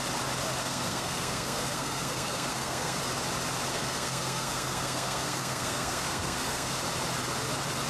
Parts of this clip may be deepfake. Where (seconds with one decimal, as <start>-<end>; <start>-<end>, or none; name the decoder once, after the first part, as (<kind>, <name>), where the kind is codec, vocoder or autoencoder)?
0.6-3.0 (codec, SNAC); 3.7-6.7